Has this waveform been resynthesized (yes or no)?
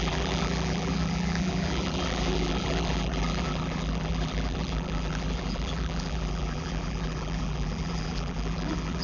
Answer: yes